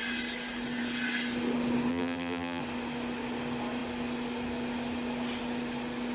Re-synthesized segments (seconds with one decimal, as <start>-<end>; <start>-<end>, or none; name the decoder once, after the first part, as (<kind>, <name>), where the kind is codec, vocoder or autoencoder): 1.9-2.6 (vocoder, BigVGAN v2)